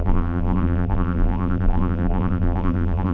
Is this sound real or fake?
fake